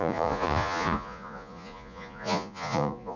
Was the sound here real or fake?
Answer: fake